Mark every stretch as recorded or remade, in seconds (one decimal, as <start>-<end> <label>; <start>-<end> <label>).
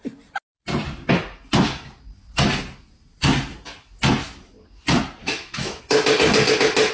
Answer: 0.0-5.2 recorded; 5.2-5.8 remade; 5.8-6.9 recorded